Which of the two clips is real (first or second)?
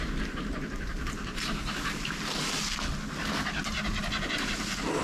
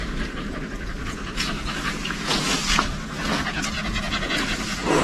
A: first